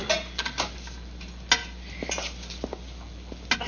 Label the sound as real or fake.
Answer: real